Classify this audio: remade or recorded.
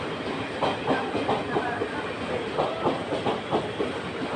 recorded